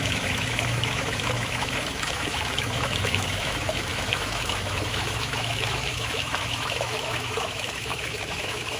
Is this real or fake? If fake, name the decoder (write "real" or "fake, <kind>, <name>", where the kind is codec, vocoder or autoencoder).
fake, autoencoder, DAC-VAE